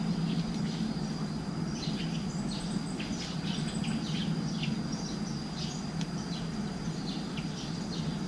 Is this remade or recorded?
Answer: recorded